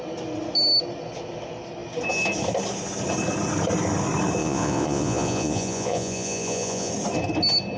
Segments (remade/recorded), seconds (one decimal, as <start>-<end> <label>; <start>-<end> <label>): 0.0-4.4 recorded; 4.4-6.9 remade; 6.9-7.8 recorded